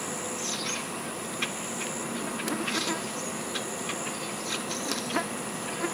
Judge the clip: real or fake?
real